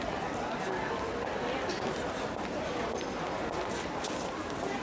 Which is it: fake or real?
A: real